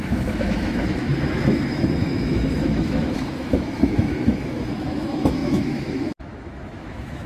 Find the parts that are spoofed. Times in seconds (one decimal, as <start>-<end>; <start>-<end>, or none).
0.0-7.3

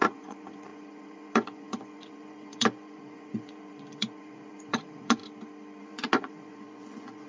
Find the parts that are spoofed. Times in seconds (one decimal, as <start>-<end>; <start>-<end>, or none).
0.0-5.2; 5.8-7.3

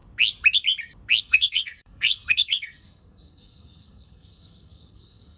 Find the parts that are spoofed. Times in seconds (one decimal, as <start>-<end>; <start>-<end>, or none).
1.2-5.4

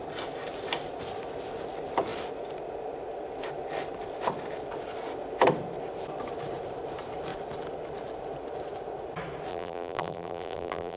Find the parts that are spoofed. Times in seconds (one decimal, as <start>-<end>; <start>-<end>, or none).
9.5-11.0

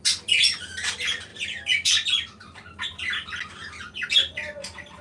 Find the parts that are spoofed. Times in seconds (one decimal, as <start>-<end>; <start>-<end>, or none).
none

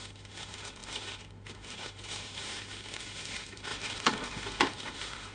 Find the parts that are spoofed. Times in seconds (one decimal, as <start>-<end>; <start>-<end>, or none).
0.0-5.3

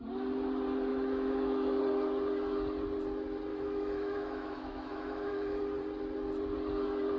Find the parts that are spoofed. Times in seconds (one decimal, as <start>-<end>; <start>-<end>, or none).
0.9-1.8; 3.5-5.6

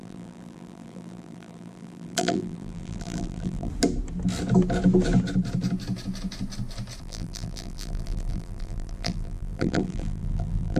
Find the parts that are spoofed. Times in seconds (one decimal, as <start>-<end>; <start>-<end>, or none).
0.0-3.7; 7.0-10.8